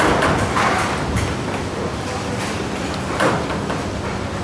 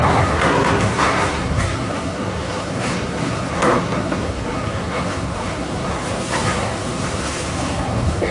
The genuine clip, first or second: first